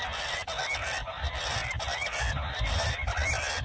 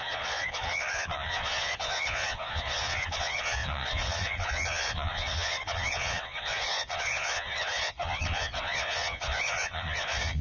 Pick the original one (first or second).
first